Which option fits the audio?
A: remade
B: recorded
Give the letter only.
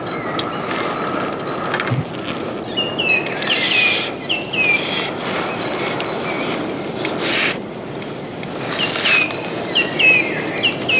B